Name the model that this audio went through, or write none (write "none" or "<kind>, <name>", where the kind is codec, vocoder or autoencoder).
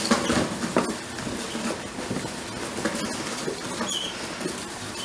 none